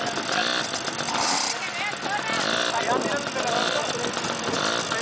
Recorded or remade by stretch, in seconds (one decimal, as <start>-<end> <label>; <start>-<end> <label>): 0.0-5.0 recorded